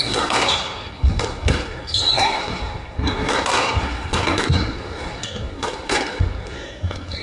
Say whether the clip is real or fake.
fake